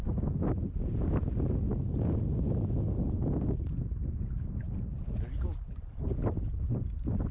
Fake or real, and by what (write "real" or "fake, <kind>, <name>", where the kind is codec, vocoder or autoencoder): real